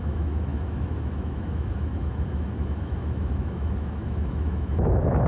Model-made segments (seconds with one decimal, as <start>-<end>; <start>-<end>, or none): 0.0-5.3